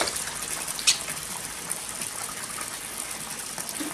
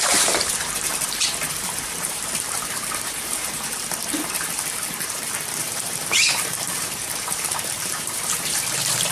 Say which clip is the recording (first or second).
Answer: first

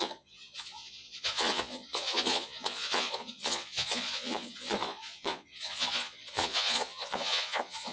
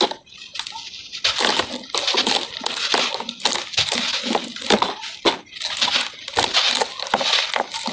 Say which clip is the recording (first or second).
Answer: second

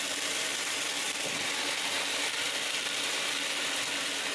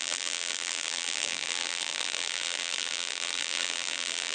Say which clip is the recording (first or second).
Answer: first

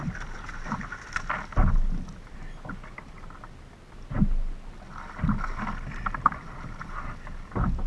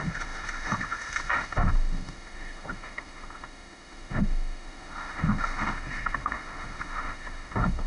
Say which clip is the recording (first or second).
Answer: first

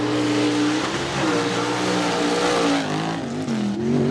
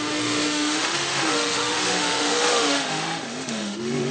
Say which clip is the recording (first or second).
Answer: first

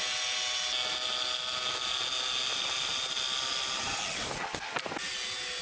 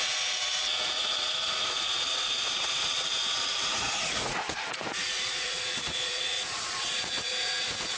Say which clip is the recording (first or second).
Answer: first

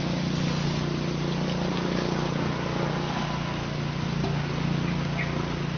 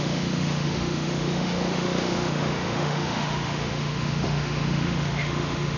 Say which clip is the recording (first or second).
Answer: first